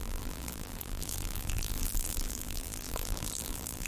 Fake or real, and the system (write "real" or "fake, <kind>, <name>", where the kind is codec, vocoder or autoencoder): fake, vocoder, BigVGAN v2